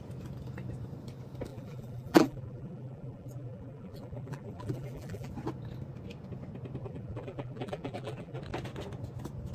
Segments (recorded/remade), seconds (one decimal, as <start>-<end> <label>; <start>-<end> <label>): 0.0-1.5 recorded; 1.5-5.3 remade; 5.3-6.8 recorded; 6.8-8.4 remade; 8.4-9.5 recorded